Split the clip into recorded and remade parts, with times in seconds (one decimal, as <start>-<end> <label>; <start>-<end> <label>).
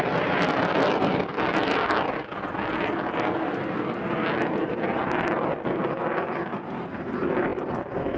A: 0.0-8.2 recorded